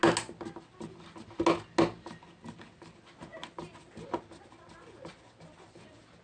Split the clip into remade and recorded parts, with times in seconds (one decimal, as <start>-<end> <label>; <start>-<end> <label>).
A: 0.0-6.2 recorded